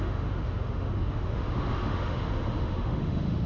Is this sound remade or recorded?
remade